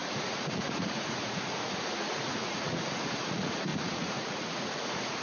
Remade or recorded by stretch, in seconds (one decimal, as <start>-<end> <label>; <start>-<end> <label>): 0.0-5.2 remade

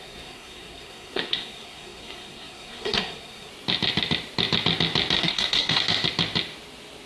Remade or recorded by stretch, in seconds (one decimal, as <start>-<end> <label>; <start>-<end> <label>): 0.0-3.5 remade; 3.5-5.2 recorded; 5.2-5.8 remade; 5.8-7.1 recorded

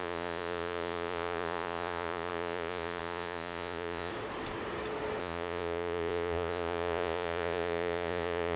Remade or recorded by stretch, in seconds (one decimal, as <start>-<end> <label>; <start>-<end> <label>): 0.0-4.1 remade; 4.1-5.2 recorded; 5.2-8.6 remade

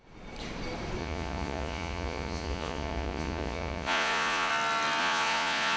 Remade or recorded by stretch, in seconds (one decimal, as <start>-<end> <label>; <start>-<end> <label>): 0.0-1.0 recorded; 1.0-4.5 remade; 4.5-5.0 recorded; 5.0-5.8 remade

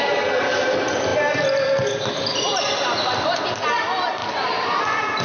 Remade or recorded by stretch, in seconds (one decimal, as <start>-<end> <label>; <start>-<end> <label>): 0.0-4.2 recorded; 4.2-4.8 remade; 4.8-5.2 recorded

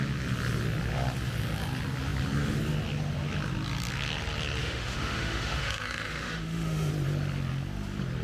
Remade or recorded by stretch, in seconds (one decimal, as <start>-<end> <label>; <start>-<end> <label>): 0.0-4.6 recorded; 4.6-6.9 remade; 6.9-8.2 recorded